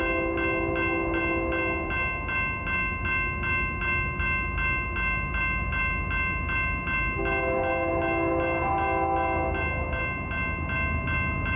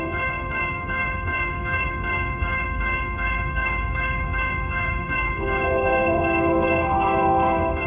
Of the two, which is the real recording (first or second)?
first